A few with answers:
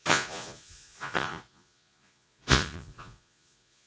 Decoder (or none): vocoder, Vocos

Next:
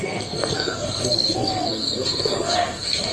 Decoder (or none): codec, SNAC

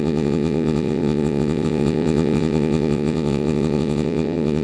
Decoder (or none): vocoder, WaveNeXt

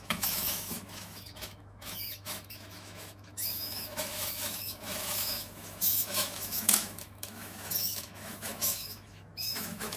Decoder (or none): autoencoder, DAC-VAE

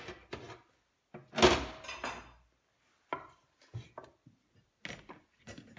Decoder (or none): none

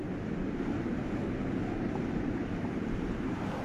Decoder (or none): none